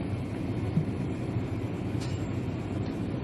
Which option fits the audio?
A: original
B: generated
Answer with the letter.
B